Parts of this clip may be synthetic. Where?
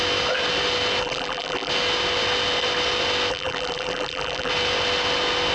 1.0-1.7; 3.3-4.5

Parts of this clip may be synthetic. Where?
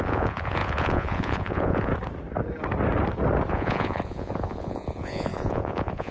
0.0-1.9; 3.5-6.1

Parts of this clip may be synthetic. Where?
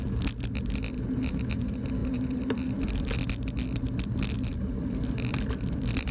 2.0-2.8; 4.5-6.1